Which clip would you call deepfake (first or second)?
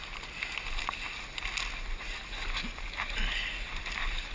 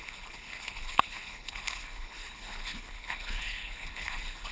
second